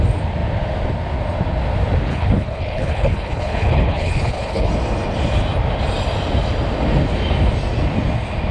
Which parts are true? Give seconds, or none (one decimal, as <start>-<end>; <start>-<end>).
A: 0.0-2.1; 4.7-8.5